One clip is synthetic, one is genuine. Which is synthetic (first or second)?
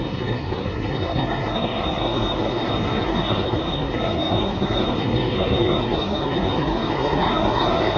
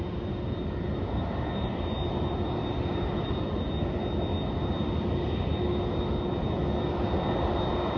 first